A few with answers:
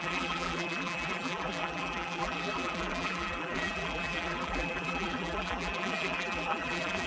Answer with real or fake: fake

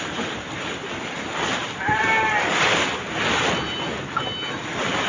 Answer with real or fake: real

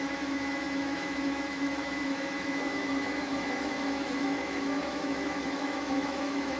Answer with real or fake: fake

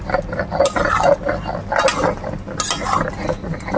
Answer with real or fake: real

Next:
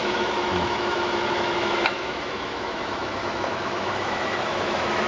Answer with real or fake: fake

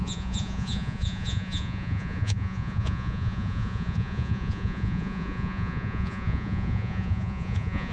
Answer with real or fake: fake